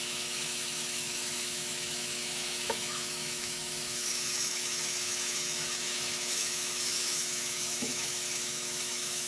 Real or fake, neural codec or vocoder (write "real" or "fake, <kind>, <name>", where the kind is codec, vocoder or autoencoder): fake, autoencoder, DAC-VAE